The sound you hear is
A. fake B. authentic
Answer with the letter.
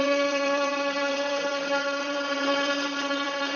A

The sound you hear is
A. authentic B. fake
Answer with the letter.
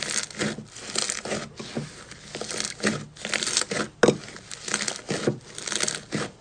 A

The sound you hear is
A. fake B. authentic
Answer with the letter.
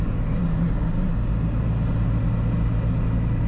B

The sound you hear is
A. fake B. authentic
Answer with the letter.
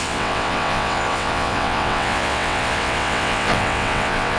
A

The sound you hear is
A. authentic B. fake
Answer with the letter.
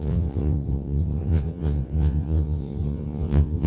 B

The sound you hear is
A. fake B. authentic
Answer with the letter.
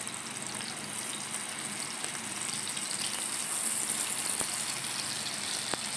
B